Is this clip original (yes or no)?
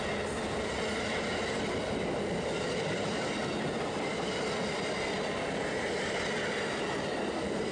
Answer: yes